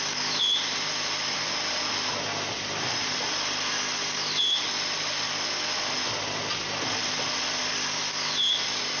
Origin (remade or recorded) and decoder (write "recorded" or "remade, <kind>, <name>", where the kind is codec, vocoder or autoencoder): recorded